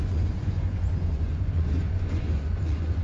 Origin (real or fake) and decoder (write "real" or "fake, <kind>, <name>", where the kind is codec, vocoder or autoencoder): fake, vocoder, Vocos